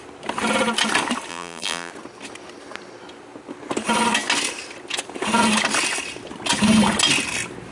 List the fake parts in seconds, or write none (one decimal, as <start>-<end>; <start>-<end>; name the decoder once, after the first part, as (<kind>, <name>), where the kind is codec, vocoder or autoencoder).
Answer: 1.3-1.9 (vocoder, BigVGAN v2)